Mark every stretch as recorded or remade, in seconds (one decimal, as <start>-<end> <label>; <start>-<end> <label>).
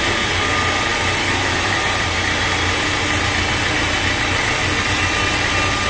0.0-5.9 recorded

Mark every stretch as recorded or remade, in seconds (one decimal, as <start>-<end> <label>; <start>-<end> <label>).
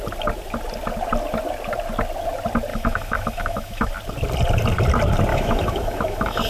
0.0-2.7 recorded; 2.7-3.9 remade; 3.9-5.3 recorded; 5.3-6.5 remade